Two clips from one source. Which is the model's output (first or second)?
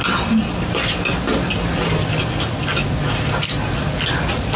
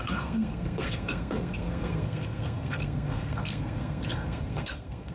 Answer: second